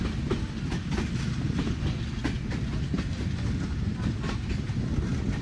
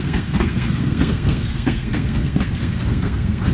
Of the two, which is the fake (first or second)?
second